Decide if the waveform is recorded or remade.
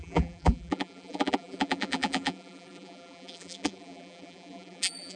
remade